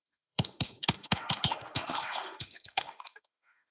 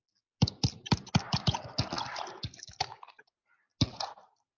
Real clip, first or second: second